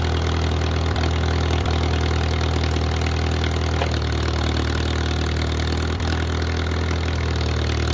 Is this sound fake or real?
real